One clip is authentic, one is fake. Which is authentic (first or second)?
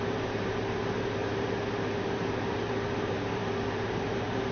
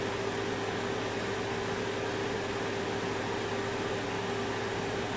second